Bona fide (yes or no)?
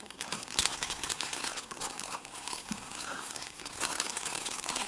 no